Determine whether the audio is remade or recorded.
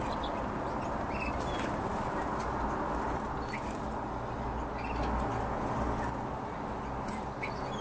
recorded